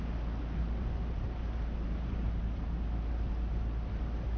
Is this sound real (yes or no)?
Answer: yes